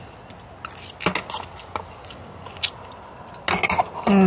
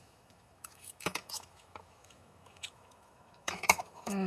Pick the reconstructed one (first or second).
second